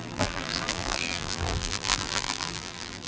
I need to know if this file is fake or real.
fake